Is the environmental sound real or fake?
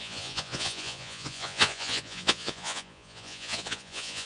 fake